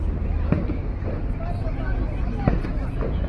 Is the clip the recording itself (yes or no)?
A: yes